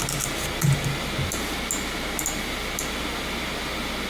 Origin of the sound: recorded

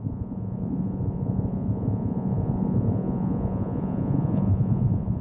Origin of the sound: remade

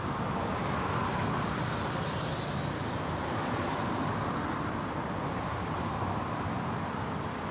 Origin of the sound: recorded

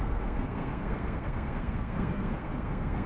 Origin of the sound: remade